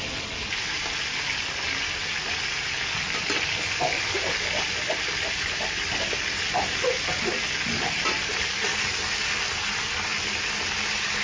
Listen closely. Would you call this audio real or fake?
real